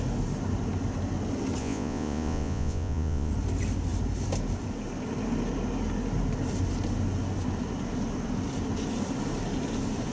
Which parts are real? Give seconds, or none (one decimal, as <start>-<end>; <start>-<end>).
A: 0.0-1.6; 3.3-10.1